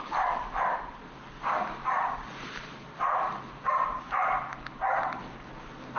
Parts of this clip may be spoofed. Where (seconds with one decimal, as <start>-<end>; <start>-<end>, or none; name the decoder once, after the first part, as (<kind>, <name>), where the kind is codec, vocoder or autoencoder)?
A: none